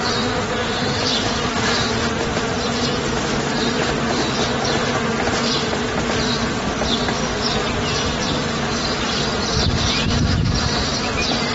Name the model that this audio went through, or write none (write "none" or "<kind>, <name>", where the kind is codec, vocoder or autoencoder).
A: none